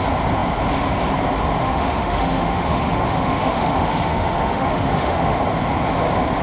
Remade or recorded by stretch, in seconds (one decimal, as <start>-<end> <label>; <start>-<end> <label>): 0.0-1.6 recorded; 1.6-5.4 remade; 5.4-6.4 recorded